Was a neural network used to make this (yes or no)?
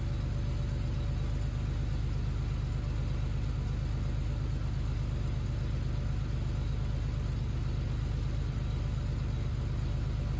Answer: no